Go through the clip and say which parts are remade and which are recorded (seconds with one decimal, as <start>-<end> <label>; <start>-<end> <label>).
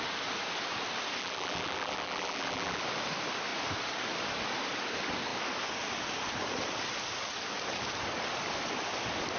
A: 0.0-1.2 recorded; 1.2-2.8 remade; 2.8-9.4 recorded